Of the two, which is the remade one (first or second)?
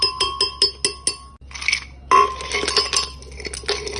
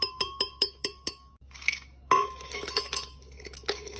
second